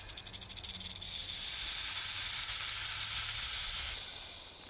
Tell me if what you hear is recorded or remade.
recorded